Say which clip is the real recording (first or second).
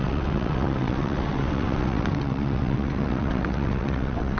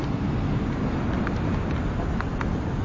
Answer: second